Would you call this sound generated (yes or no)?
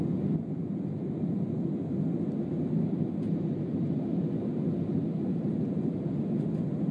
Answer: no